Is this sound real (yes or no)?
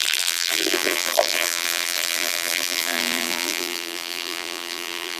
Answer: no